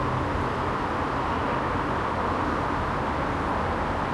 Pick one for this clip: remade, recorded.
recorded